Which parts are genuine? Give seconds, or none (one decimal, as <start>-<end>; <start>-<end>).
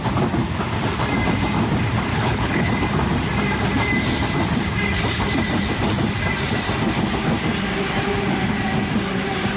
0.0-2.1; 2.7-9.6